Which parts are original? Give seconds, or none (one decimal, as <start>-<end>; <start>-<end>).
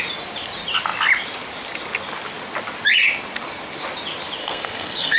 0.0-4.4